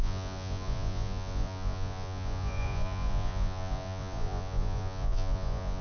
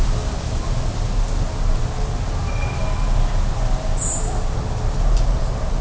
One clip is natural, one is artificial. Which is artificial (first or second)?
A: first